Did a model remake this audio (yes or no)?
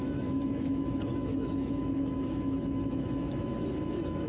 yes